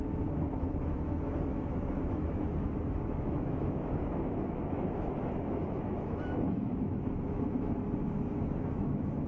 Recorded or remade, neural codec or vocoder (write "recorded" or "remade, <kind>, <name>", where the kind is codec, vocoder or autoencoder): remade, autoencoder, DAC-VAE